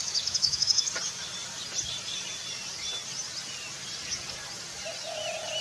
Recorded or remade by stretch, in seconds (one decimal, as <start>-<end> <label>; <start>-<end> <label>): 0.0-0.9 remade; 0.9-5.6 recorded